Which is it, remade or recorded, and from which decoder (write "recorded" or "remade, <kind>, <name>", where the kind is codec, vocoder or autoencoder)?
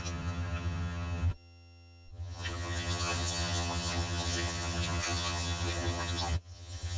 remade, vocoder, HiFi-GAN